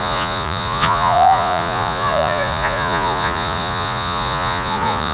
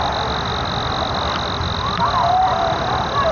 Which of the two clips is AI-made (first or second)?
first